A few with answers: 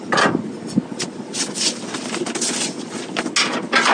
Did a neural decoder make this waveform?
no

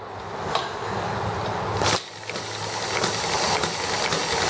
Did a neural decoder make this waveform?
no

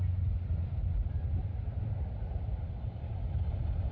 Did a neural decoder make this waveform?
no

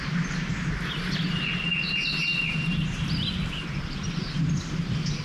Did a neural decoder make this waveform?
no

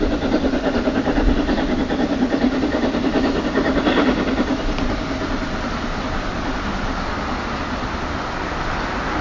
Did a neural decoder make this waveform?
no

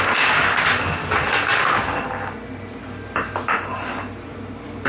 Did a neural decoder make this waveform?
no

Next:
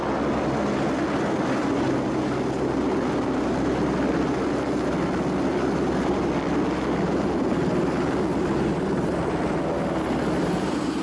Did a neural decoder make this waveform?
no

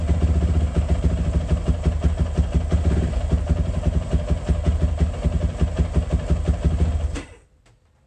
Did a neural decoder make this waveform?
no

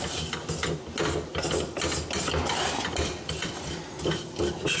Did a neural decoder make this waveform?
no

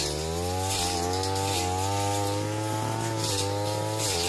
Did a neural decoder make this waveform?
no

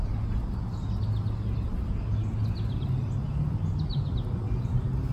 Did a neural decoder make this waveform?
no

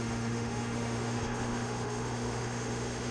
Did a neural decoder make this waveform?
yes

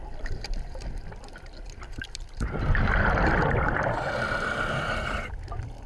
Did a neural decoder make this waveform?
yes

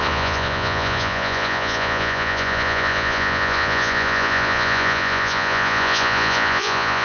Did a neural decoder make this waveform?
yes